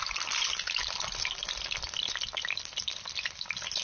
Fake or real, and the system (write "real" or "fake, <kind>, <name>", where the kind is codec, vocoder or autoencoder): real